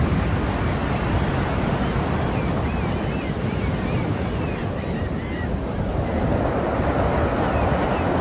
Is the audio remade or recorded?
recorded